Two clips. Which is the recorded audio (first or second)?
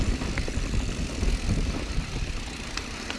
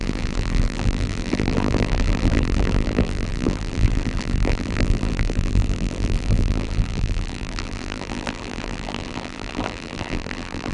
first